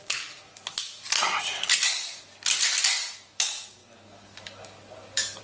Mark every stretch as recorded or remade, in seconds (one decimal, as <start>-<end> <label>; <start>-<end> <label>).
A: 0.0-0.5 remade; 0.5-1.8 recorded; 1.8-2.3 remade; 2.3-2.8 recorded; 2.8-5.4 remade